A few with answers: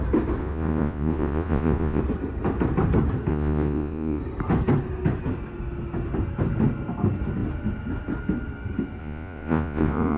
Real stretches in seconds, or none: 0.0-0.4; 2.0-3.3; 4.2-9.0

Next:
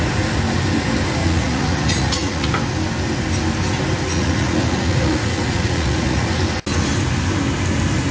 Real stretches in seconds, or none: 0.0-1.2; 2.5-4.1; 6.3-8.1

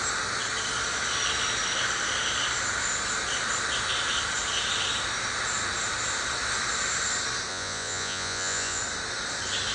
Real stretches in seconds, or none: 0.0-7.5; 8.8-9.7

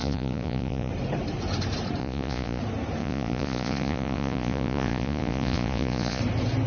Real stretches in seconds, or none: 0.9-2.0; 2.6-3.0; 6.2-6.7

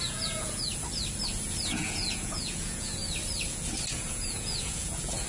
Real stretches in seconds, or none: 0.7-1.6; 3.0-3.9

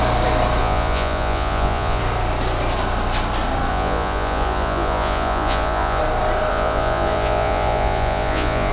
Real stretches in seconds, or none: 0.0-0.6; 2.0-3.7; 6.0-6.5

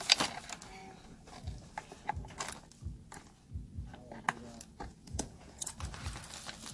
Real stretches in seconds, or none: 0.0-4.9; 5.8-6.7